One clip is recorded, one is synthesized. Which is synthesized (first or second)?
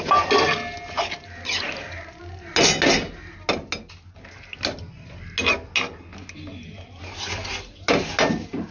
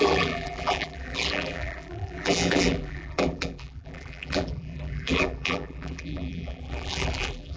second